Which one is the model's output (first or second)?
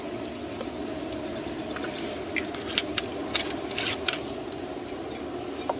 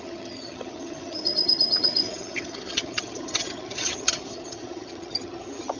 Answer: second